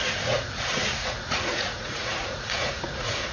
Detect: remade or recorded remade